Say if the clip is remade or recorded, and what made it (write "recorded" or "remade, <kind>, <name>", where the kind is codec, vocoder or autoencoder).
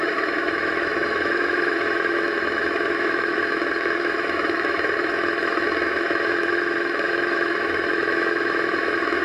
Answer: remade, autoencoder, DAC-VAE